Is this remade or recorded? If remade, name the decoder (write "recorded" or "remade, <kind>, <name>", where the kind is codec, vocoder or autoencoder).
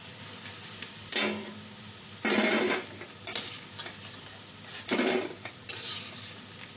recorded